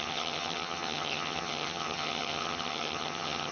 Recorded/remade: remade